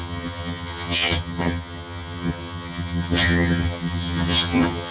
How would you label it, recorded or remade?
remade